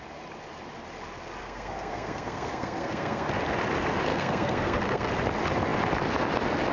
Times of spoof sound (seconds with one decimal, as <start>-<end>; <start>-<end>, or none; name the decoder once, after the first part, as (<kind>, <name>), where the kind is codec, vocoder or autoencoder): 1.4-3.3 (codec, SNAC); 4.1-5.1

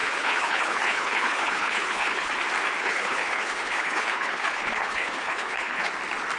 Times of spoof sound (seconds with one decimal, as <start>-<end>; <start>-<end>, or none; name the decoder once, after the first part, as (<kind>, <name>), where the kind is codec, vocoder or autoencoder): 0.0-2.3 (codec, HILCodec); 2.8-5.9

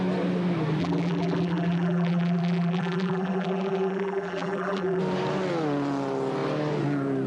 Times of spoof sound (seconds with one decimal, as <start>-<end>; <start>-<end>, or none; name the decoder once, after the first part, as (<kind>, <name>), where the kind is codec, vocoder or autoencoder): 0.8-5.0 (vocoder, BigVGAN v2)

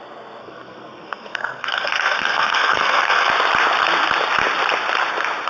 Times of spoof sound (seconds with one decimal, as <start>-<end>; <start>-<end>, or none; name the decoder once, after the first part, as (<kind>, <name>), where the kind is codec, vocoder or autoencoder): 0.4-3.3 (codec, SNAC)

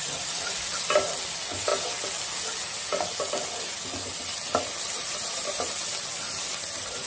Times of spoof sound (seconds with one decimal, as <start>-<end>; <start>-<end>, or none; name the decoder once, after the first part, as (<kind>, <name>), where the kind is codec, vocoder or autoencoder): none